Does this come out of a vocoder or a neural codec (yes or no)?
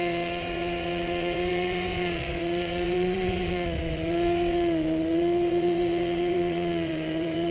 yes